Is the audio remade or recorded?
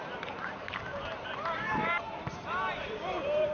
remade